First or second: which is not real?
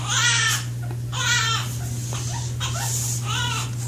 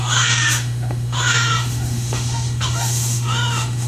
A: second